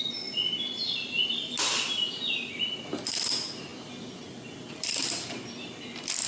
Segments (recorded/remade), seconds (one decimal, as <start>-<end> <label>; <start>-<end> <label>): 0.0-6.3 recorded